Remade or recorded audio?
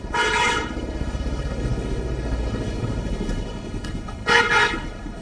remade